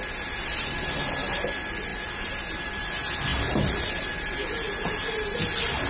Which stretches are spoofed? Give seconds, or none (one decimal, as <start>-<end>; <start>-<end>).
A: 1.9-2.7; 3.3-4.4